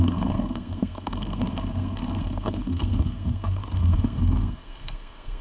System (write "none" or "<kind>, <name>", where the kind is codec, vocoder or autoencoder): codec, SNAC